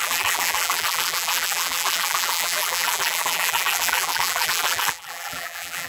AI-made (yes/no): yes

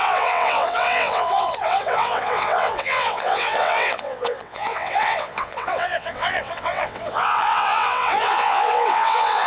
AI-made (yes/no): yes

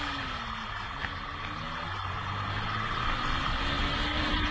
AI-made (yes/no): no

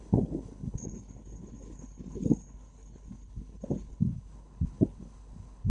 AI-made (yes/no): yes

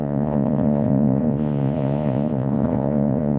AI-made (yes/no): yes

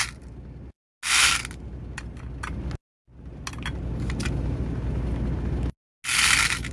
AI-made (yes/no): no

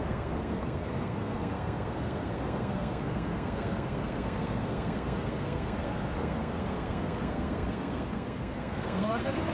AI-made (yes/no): yes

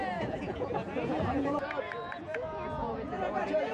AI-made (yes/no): yes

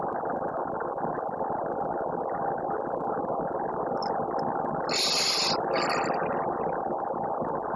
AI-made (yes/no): no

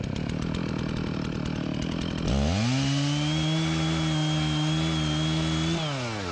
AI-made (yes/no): no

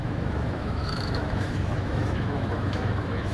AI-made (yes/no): yes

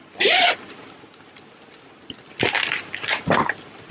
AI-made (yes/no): no